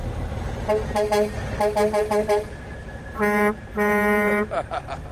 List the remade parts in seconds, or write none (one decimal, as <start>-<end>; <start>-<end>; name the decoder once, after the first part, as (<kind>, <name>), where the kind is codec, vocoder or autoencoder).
0.0-5.1 (vocoder, BigVGAN v2)